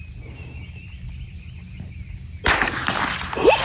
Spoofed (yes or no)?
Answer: no